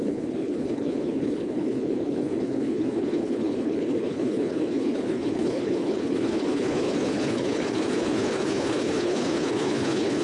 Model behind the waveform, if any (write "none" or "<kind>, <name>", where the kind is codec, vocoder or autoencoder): codec, HILCodec